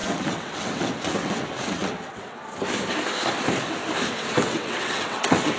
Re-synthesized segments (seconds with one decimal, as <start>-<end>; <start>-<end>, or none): 0.0-2.4; 4.1-5.6